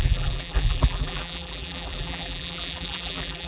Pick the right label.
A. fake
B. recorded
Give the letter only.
A